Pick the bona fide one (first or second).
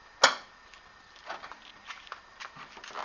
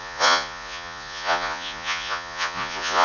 first